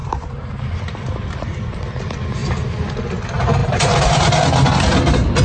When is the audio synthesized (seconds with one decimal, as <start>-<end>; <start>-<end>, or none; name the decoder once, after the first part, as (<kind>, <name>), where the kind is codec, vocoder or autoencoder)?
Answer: 0.0-0.6 (vocoder, BigVGAN v2); 2.4-3.0